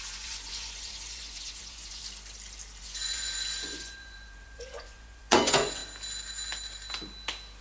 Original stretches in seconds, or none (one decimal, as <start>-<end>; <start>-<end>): 2.0-2.8; 5.8-7.6